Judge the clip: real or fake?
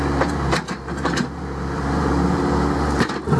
fake